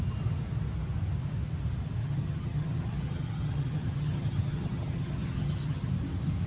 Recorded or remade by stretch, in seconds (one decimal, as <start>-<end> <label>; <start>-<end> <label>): 0.0-2.0 recorded; 2.0-5.9 remade; 5.9-6.5 recorded